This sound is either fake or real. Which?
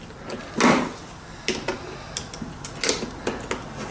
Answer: real